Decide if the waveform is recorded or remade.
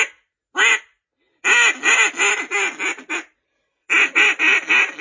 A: recorded